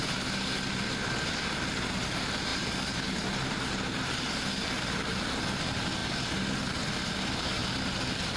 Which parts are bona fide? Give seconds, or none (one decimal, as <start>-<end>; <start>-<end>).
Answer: 0.0-2.5; 5.4-7.6